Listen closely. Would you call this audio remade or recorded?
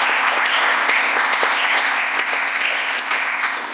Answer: remade